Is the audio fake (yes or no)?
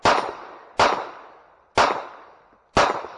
no